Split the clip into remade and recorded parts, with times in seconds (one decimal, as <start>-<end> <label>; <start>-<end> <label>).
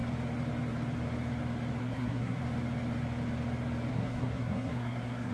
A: 0.0-1.8 recorded; 1.8-2.4 remade; 2.4-3.9 recorded; 3.9-5.3 remade